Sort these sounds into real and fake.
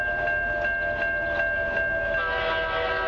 real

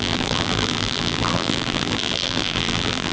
fake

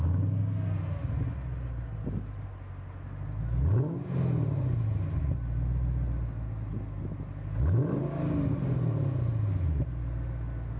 real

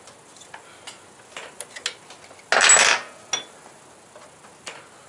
real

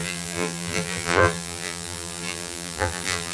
fake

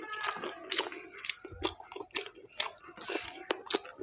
real